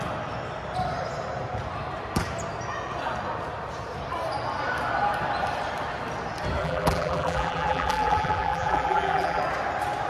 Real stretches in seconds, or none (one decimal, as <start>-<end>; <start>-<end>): 0.0-6.6; 9.4-10.1